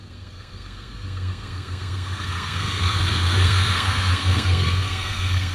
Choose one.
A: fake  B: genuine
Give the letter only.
A